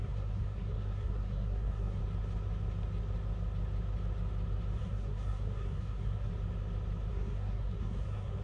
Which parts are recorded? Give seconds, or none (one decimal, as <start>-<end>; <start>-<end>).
2.0-4.8; 6.3-7.1